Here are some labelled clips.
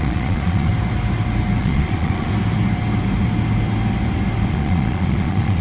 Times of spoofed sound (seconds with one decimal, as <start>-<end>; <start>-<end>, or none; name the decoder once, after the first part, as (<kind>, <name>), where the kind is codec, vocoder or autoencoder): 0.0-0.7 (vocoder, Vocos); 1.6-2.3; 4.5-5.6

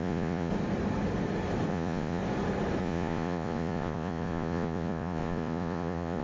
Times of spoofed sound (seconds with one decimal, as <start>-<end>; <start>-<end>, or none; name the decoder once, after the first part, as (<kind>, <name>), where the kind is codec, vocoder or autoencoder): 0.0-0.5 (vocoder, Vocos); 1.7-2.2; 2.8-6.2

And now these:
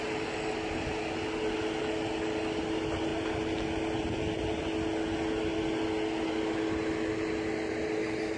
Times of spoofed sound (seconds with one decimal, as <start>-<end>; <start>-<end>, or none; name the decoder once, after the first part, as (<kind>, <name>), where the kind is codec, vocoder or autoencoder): none

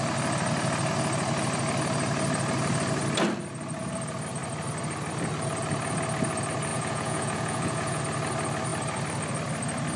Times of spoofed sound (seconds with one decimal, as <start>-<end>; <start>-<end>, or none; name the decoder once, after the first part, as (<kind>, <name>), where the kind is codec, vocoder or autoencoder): 6.7-8.0 (vocoder, Vocos)

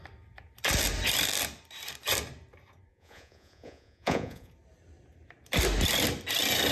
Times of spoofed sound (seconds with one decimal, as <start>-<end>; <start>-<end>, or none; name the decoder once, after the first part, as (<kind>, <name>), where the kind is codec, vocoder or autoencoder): 2.9-4.5 (vocoder, Vocos)

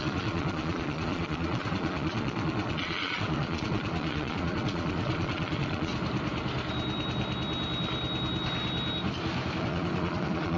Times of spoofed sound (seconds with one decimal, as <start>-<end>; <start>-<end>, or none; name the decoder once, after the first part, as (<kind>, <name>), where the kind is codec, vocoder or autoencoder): 0.0-5.9 (vocoder, Vocos); 9.6-10.6